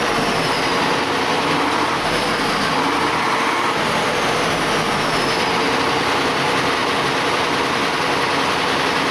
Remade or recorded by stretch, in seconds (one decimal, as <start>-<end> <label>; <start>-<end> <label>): 0.0-9.1 recorded